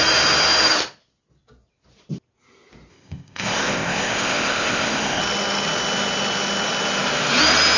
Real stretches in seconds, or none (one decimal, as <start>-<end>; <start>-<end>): 0.0-2.9; 5.2-7.8